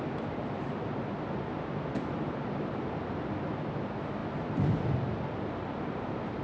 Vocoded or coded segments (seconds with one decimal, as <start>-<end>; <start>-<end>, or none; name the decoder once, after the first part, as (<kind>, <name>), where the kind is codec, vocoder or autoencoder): none